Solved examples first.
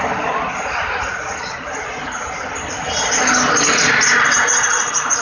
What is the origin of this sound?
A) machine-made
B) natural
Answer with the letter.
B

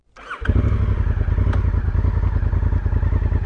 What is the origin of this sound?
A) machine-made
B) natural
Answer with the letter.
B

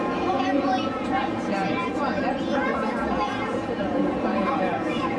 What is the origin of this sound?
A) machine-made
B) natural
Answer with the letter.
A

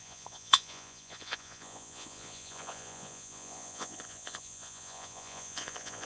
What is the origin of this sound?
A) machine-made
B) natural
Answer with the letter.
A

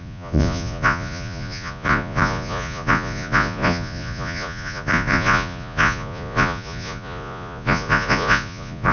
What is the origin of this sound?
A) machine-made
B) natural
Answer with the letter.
A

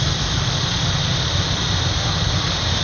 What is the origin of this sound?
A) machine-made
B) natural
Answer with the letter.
B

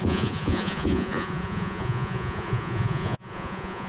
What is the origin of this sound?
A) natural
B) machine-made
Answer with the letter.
B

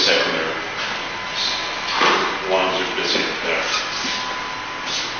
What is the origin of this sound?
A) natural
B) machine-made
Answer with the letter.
A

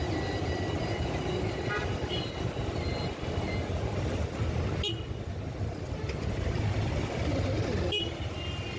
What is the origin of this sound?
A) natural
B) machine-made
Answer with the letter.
A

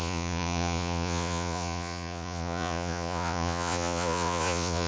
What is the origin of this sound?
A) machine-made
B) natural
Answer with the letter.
A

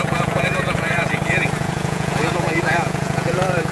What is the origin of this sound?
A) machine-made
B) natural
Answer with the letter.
A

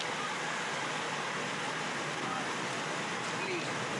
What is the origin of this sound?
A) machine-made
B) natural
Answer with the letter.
B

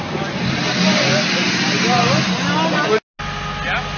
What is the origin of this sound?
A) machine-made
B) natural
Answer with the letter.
B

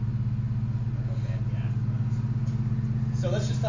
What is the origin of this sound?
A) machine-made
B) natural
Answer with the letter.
B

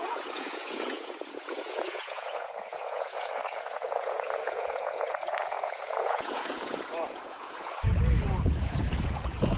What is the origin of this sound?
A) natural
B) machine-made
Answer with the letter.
B